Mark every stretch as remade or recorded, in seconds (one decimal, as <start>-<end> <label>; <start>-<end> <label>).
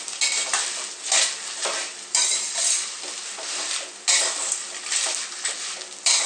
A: 0.0-6.3 recorded